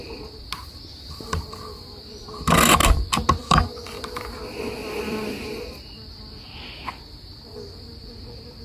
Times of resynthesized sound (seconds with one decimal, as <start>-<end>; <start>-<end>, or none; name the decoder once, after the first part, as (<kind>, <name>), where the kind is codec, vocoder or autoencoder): none